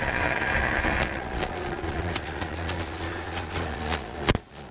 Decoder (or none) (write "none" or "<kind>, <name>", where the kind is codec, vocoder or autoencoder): vocoder, Vocos